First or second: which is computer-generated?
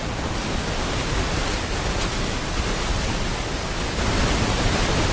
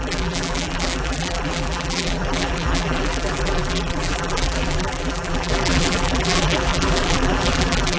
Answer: second